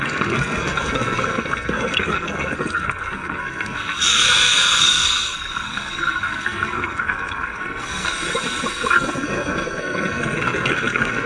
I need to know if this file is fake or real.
fake